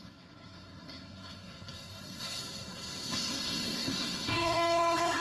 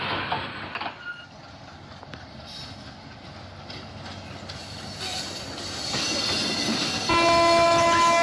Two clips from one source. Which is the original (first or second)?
second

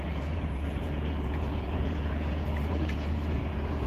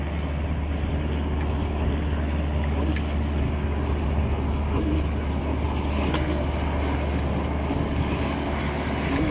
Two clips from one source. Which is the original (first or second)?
second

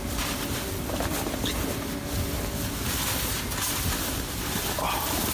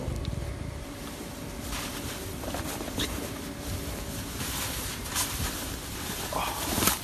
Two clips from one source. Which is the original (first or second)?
first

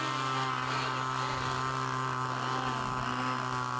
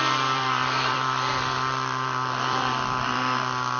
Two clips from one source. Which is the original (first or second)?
first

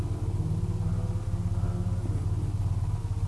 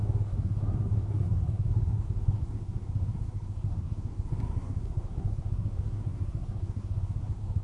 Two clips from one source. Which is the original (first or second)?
first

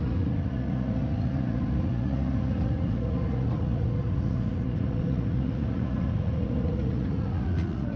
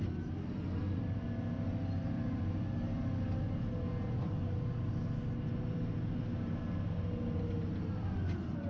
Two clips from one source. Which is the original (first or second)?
second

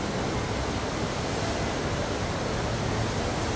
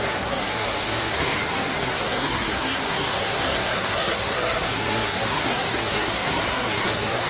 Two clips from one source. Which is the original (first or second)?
first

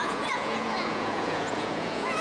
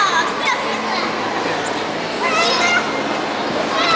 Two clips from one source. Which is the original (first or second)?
second